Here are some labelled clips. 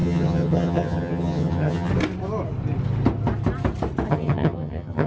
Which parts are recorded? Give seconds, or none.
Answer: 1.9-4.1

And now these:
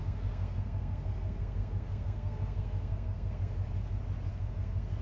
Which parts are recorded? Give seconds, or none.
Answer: 3.5-4.3